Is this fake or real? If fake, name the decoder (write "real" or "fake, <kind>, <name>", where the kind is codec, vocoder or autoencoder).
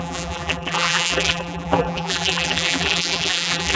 fake, vocoder, BigVGAN v2